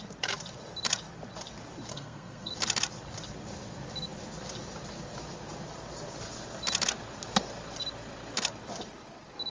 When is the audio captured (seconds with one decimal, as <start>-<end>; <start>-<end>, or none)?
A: 0.0-1.9; 2.5-9.5